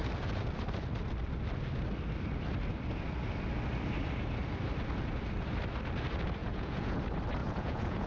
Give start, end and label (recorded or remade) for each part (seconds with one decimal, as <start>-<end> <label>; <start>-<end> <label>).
0.0-6.4 recorded; 6.4-7.0 remade; 7.0-7.4 recorded; 7.4-8.1 remade